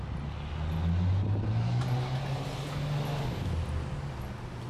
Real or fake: real